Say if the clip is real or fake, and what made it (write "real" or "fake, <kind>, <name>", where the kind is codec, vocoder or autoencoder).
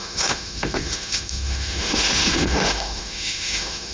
fake, autoencoder, DAC-VAE